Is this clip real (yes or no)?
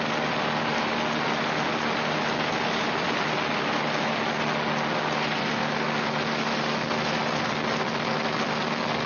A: yes